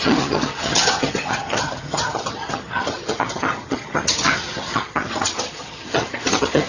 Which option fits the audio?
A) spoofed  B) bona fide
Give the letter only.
A